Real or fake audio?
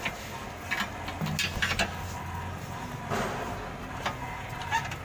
real